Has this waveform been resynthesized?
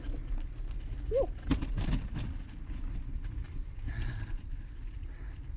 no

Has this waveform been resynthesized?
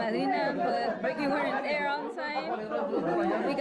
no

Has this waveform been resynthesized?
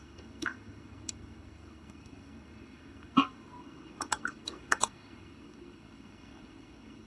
yes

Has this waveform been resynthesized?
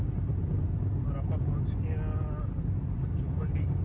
no